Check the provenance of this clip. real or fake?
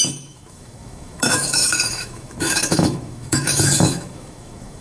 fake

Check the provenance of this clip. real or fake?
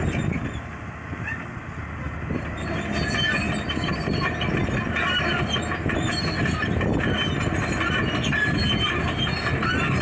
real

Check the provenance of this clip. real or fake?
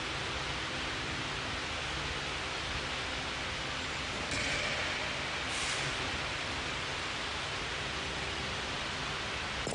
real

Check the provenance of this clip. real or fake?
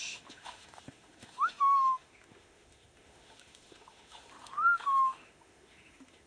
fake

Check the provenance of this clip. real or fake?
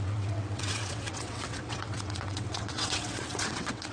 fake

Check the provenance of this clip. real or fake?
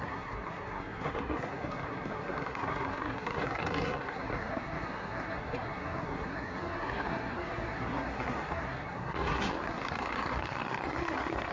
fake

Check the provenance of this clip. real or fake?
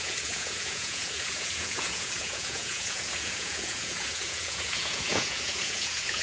fake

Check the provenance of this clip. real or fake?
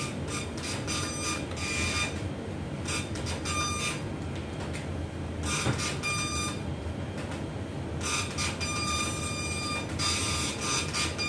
real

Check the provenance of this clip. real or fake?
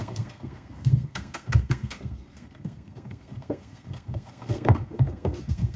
fake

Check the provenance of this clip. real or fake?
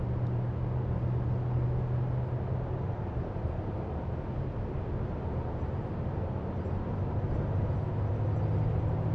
real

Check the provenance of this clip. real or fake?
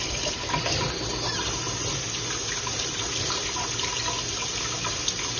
real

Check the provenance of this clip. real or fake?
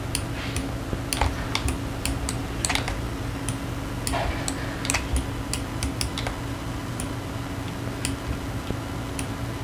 real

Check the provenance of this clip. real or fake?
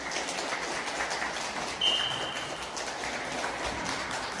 real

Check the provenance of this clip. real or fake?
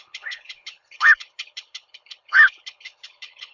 fake